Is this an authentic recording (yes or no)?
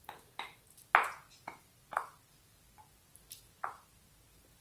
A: yes